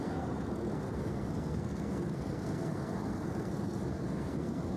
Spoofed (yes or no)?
yes